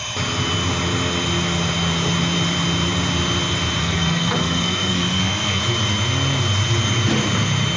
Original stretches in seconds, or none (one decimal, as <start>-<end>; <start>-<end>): 0.0-3.8; 5.6-7.8